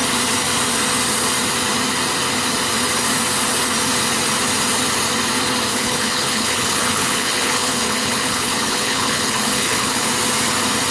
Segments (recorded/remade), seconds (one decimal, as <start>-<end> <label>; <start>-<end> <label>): 0.0-5.7 recorded; 5.7-10.1 remade; 10.1-10.9 recorded